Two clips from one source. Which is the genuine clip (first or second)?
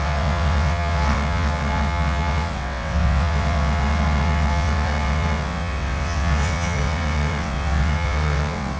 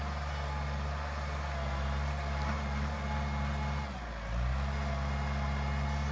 second